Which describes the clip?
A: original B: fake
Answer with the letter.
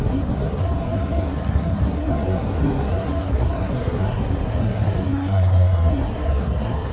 B